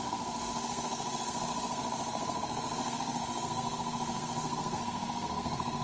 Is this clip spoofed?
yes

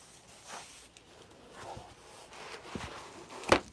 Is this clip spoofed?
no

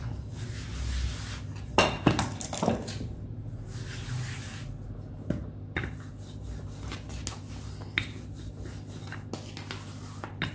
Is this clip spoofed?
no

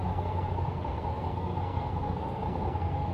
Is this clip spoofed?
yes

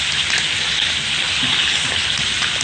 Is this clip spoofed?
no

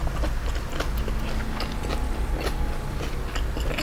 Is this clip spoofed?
no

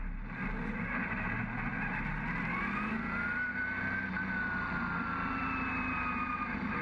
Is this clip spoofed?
no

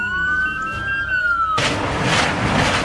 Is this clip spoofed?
no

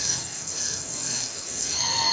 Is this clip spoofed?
yes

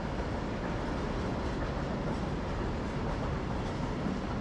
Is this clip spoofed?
no